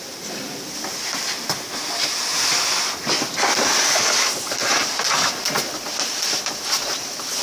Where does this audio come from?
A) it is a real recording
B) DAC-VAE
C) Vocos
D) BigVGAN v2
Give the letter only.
A